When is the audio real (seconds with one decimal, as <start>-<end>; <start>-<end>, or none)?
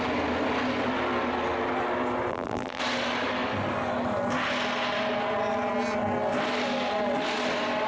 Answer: 0.0-2.3; 2.8-7.9